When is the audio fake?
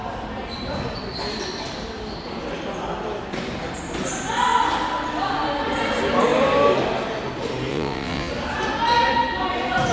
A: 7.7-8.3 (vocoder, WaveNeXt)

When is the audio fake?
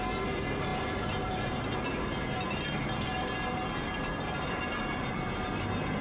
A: none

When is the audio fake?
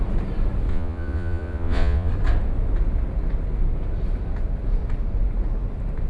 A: 0.7-2.1 (vocoder, Vocos)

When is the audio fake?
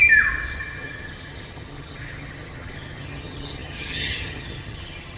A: 0.6-5.2 (vocoder, HiFi-GAN)